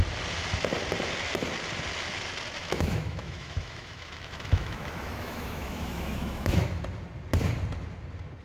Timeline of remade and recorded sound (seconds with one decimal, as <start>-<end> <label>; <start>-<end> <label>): 0.0-2.6 recorded; 2.6-6.8 remade; 6.8-8.4 recorded